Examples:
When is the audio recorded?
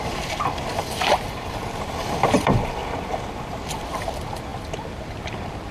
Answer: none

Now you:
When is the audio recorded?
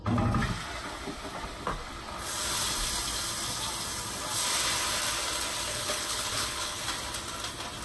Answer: 0.0-5.7; 6.8-7.8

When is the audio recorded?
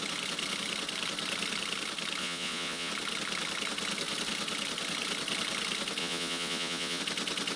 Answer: 0.0-2.2; 2.9-6.0; 7.0-7.6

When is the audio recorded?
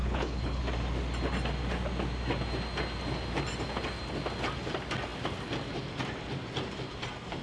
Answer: 0.6-7.4